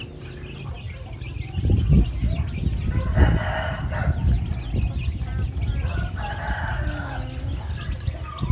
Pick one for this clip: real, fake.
real